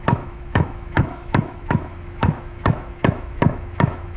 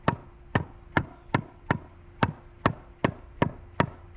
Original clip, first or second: second